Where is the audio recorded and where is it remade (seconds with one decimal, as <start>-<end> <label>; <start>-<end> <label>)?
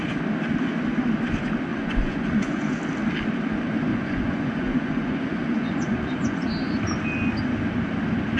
0.0-1.7 recorded; 1.7-2.8 remade; 2.8-3.9 recorded; 3.9-6.5 remade; 6.5-8.4 recorded